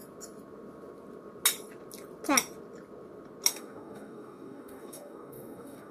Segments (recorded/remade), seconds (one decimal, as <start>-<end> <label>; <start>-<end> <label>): 0.0-3.5 recorded; 3.5-5.9 remade